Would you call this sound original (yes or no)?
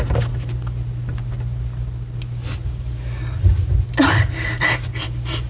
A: yes